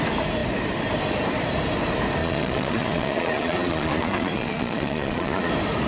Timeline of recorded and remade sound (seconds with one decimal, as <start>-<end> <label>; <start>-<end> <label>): 0.0-2.2 recorded; 2.2-5.5 remade; 5.5-5.9 recorded